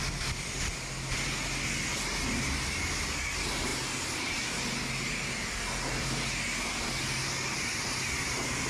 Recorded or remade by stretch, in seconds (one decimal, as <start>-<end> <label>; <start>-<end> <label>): 0.0-8.7 recorded